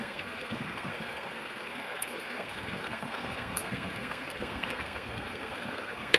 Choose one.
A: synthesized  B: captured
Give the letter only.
A